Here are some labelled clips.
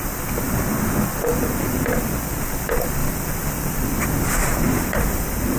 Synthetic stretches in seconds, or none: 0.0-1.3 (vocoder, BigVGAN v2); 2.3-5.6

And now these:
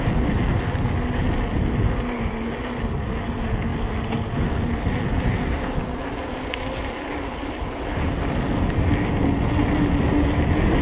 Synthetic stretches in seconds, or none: none

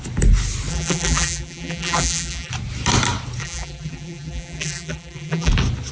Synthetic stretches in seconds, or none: 0.7-2.5 (vocoder, BigVGAN v2); 3.4-5.5